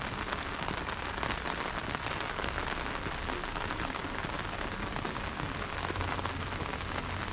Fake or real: real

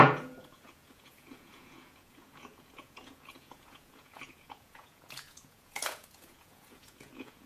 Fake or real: fake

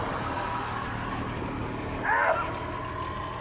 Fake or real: real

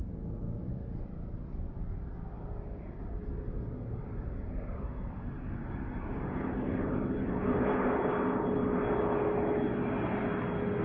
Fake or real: real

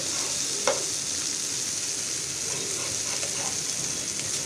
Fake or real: real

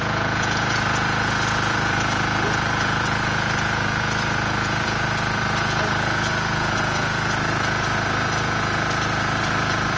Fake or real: fake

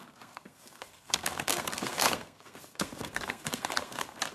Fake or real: fake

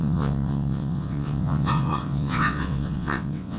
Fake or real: fake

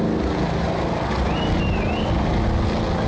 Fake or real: real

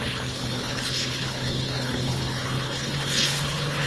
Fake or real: fake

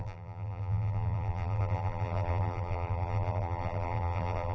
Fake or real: fake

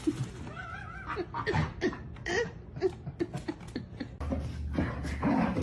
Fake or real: real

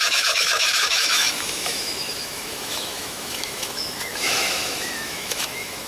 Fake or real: fake